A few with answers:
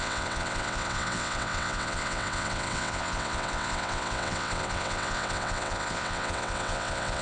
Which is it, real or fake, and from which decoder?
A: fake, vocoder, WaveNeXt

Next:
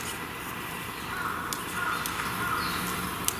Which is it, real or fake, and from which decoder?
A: real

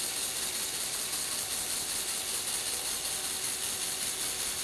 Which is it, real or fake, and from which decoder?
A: real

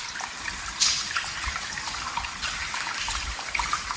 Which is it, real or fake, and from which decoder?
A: real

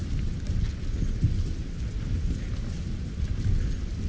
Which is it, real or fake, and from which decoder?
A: real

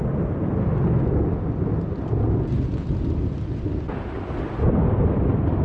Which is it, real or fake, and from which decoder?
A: real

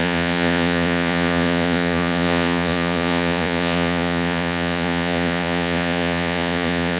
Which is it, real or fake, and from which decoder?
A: fake, vocoder, Vocos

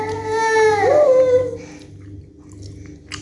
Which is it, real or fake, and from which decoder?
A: real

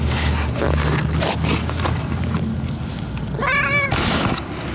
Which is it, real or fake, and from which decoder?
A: real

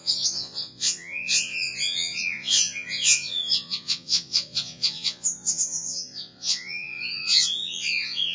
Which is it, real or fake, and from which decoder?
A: fake, vocoder, Vocos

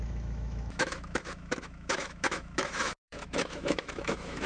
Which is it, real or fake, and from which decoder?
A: fake, autoencoder, DAC-VAE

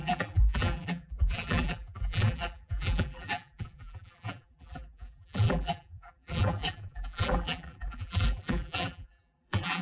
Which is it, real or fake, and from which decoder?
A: fake, vocoder, BigVGAN v2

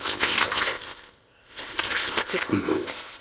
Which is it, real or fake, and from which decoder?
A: fake, codec, ZipCodec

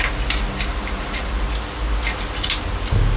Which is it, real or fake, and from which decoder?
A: real